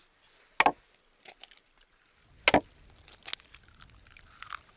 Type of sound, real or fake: real